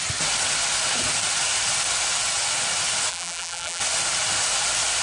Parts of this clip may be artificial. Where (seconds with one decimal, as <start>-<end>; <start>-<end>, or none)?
3.1-3.8